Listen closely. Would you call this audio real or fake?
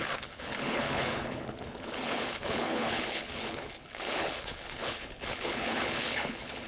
fake